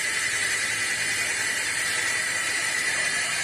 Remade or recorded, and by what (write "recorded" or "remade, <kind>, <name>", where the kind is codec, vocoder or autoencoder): remade, vocoder, BigVGAN v2